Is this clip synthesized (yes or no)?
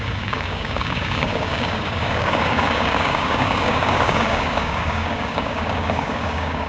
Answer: yes